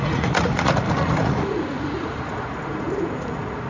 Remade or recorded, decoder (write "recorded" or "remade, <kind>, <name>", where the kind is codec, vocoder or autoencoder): remade, vocoder, Vocos